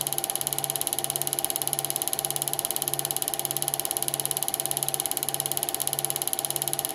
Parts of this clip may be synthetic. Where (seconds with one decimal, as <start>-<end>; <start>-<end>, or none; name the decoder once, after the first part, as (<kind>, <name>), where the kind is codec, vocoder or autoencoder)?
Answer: none